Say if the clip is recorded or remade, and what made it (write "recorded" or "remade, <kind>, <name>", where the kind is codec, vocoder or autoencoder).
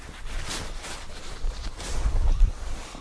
recorded